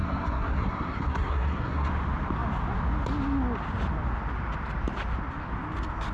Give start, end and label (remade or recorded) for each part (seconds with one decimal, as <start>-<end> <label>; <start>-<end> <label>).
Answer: 0.0-1.9 remade; 1.9-6.1 recorded